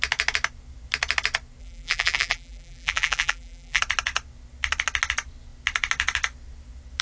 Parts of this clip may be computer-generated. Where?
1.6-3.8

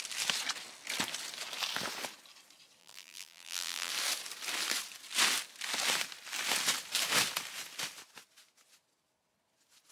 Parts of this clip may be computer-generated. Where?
2.8-3.9

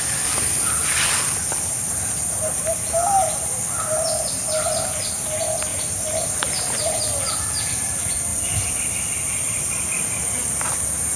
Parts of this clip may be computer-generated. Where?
5.7-7.0

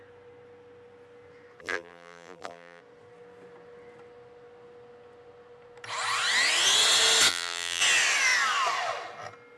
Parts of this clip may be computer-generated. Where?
1.6-2.8; 7.3-7.8